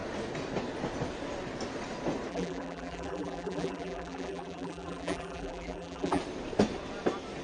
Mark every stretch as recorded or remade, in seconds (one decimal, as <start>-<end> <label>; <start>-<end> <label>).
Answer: 0.0-2.3 recorded; 2.3-6.2 remade; 6.2-7.4 recorded